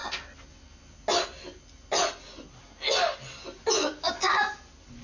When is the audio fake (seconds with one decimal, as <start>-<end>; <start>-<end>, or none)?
none